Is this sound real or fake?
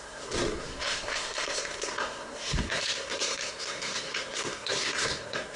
fake